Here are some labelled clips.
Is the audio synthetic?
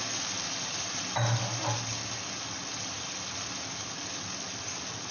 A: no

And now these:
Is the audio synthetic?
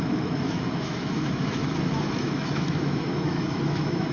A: yes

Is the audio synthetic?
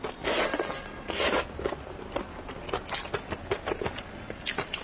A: no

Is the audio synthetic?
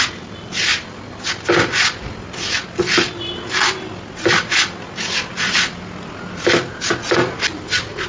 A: no